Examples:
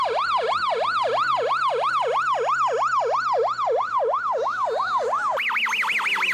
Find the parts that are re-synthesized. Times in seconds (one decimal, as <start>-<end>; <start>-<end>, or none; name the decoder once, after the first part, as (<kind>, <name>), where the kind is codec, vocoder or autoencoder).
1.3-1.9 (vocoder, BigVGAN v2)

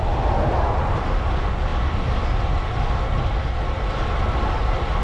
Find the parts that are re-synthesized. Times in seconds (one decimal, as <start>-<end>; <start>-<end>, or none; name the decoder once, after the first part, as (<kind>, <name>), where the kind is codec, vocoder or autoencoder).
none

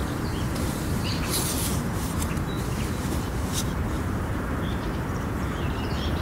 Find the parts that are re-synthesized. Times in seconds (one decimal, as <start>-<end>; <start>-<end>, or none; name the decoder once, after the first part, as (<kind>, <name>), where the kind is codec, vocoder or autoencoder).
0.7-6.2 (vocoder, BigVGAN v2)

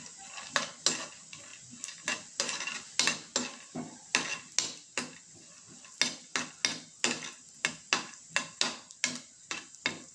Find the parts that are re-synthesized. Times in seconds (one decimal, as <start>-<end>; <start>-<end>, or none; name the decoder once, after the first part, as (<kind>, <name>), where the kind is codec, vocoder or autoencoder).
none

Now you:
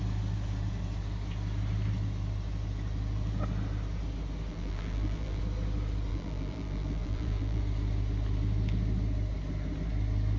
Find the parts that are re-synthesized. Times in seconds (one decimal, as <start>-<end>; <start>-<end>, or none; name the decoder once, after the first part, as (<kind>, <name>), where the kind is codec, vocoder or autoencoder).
4.5-5.4 (vocoder, BigVGAN v2); 6.1-7.6

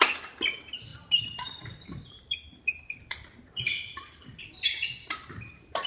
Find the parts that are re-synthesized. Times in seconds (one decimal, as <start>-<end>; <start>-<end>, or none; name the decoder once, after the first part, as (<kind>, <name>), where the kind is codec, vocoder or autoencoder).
0.9-4.4 (vocoder, BigVGAN v2)

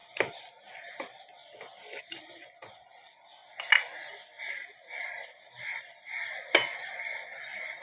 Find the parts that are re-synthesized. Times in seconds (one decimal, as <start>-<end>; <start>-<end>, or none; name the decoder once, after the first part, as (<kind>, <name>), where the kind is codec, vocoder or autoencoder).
0.0-3.4 (vocoder, BigVGAN v2); 4.1-7.8